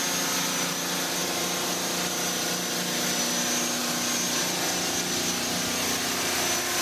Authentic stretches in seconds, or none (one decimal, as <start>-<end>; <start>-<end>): 0.0-6.8